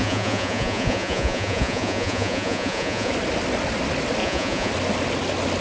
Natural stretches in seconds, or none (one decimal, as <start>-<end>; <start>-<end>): 3.1-4.2; 4.7-5.6